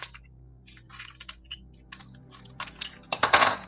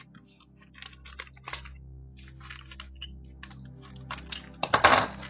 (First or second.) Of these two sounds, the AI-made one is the first